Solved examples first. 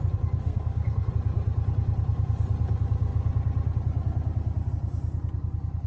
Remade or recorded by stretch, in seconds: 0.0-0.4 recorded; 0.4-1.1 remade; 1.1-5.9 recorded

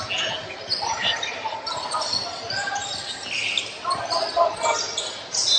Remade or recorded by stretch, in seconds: 0.0-1.0 recorded; 1.0-1.6 remade; 1.6-5.6 recorded

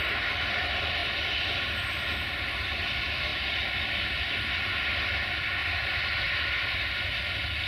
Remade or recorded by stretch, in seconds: 0.0-7.7 recorded

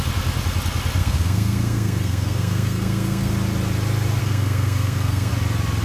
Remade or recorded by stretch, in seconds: 0.0-1.0 recorded; 1.0-3.3 remade; 3.3-4.2 recorded; 4.2-5.3 remade; 5.3-5.8 recorded

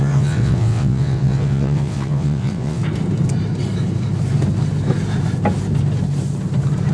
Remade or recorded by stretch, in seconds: 0.0-2.8 remade; 2.8-6.9 recorded

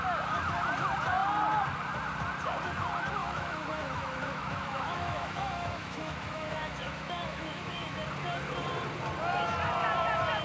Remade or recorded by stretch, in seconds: 0.0-3.2 recorded; 3.2-8.0 remade; 8.0-10.4 recorded